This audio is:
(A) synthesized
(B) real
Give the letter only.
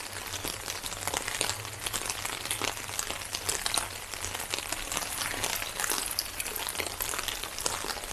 B